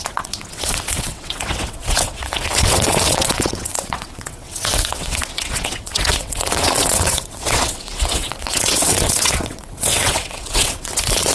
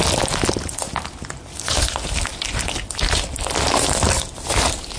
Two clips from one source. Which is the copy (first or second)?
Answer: first